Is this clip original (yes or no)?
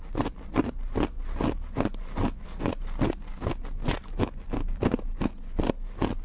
yes